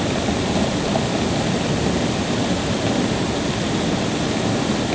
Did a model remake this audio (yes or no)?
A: no